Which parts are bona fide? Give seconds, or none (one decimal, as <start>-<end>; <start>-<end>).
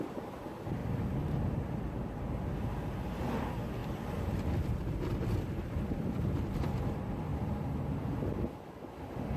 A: 0.0-0.8; 2.2-3.8; 6.8-7.3; 8.6-9.4